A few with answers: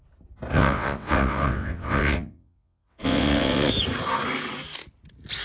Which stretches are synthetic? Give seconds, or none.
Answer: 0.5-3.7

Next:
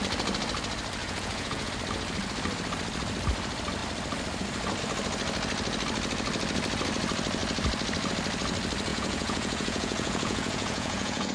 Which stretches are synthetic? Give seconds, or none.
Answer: 1.0-1.7; 8.9-11.3

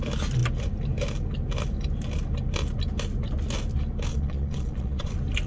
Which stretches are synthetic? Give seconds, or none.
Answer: 4.1-5.1

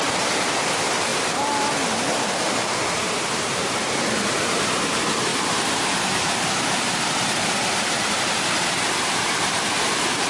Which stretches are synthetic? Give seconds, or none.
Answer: 0.0-1.1; 2.9-10.3